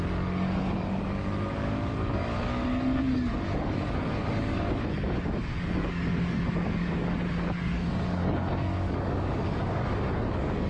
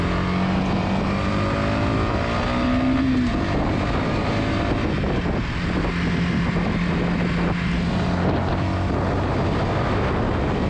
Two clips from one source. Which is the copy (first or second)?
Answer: first